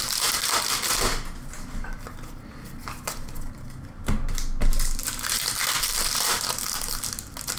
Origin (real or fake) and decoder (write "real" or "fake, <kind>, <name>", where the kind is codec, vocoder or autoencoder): real